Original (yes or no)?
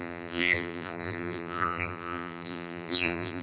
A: no